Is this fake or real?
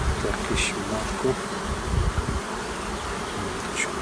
real